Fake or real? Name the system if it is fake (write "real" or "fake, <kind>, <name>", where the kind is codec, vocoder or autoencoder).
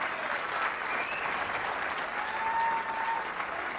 real